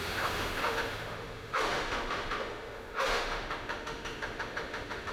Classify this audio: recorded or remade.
remade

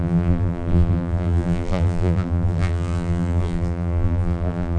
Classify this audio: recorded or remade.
remade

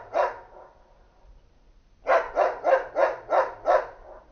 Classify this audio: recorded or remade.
recorded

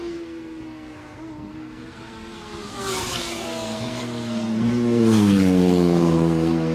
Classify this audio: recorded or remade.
remade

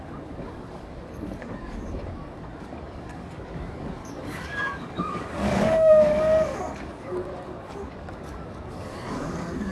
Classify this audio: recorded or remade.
remade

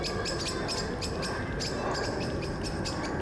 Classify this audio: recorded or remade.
recorded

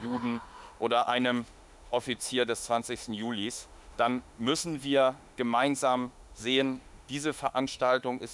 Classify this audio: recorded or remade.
remade